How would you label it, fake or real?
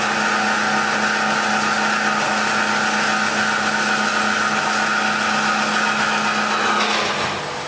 real